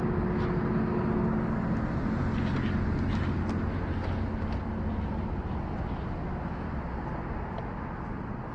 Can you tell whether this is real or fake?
real